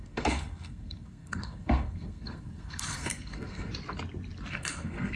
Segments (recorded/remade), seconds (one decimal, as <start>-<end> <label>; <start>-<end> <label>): 0.0-3.7 remade; 3.7-4.5 recorded; 4.5-5.2 remade